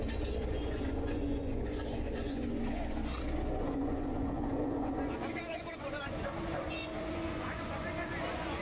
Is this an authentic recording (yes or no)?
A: no